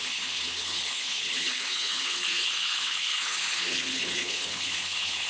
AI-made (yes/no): yes